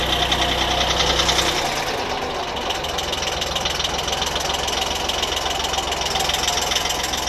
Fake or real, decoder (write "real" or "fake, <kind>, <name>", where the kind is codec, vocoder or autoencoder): real